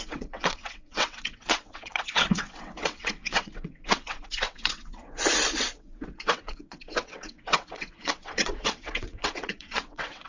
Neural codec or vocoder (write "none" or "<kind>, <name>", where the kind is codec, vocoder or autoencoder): vocoder, WaveNeXt